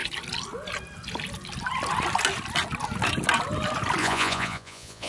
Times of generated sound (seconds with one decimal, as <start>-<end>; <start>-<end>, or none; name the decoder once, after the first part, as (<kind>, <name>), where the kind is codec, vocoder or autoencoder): 4.0-5.1 (vocoder, Vocos)